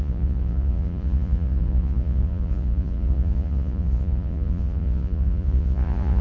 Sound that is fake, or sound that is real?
fake